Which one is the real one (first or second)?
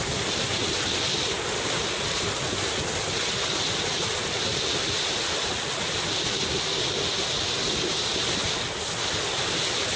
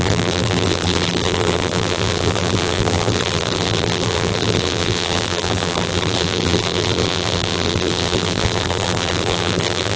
first